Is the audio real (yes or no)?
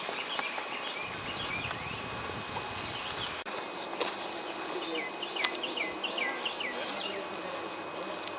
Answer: yes